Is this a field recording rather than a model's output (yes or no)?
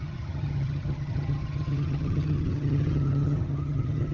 no